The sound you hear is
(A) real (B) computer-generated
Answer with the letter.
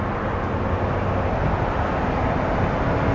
A